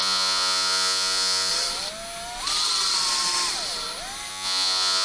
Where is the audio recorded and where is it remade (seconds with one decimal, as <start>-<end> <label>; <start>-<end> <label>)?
0.0-1.5 remade; 1.5-4.3 recorded; 4.3-5.0 remade